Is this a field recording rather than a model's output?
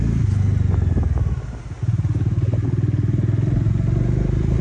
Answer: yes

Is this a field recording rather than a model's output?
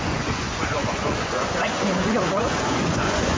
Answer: no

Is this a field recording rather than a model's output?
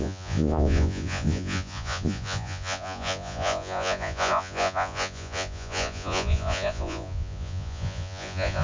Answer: no